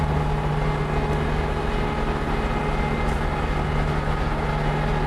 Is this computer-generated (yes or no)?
no